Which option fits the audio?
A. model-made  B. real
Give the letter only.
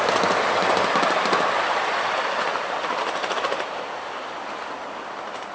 B